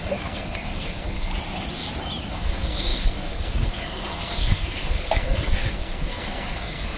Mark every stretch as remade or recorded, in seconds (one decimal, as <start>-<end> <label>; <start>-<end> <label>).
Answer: 0.0-1.3 remade; 1.3-2.3 recorded; 2.3-7.0 remade